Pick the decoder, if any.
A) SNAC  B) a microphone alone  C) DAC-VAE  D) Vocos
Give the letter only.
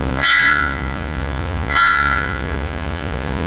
D